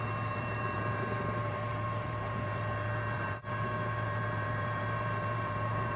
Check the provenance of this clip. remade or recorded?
remade